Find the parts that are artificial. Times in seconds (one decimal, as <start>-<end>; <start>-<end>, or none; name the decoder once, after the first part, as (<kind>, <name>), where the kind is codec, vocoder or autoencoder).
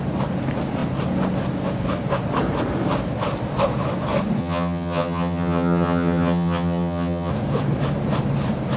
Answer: 4.4-7.3 (vocoder, HiFi-GAN)